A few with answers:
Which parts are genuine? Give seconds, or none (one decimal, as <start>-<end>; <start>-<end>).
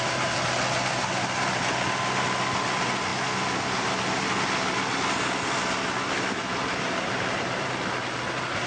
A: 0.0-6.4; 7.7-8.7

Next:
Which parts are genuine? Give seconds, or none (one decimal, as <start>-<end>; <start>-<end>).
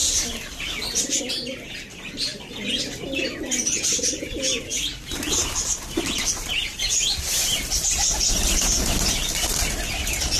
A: 1.2-10.4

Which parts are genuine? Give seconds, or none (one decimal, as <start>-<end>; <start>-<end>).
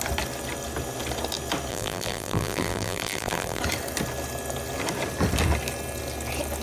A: 0.0-1.7; 3.6-6.6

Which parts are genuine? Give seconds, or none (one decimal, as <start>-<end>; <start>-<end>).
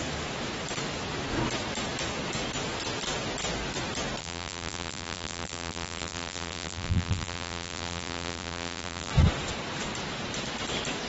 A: 0.0-4.2; 9.1-11.1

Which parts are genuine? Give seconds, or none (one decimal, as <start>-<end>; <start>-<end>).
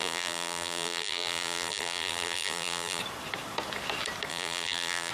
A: 3.0-4.3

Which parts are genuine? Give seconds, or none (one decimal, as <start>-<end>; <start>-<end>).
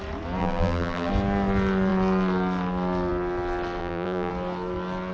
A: 0.0-0.4; 1.1-3.8; 4.3-5.1